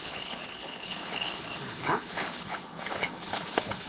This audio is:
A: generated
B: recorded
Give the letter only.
A